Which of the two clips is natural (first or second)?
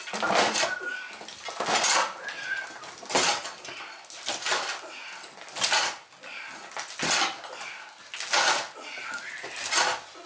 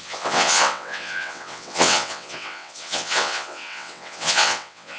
first